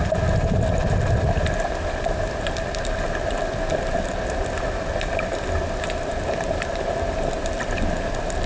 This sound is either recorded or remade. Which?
recorded